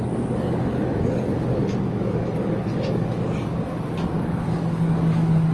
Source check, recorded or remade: remade